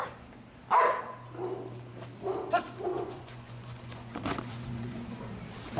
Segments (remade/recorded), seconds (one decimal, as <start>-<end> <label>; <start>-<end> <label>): 0.0-2.9 recorded; 2.9-5.3 remade; 5.3-5.8 recorded